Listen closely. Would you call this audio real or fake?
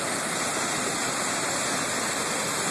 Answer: real